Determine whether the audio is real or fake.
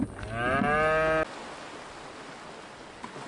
real